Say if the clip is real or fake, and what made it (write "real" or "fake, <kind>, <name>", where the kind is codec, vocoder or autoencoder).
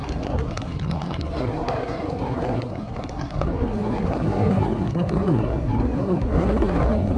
fake, codec, SNAC